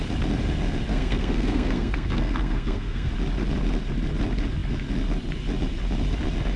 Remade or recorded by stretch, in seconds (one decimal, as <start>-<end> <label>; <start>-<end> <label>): 0.0-0.9 recorded; 0.9-3.1 remade; 3.1-6.6 recorded